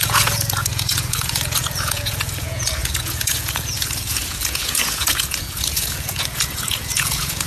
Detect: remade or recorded remade